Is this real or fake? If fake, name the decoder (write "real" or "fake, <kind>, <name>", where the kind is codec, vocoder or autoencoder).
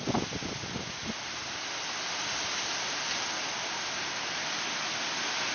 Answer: real